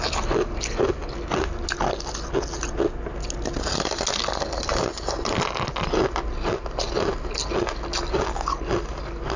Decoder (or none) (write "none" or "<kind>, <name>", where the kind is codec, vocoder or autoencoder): none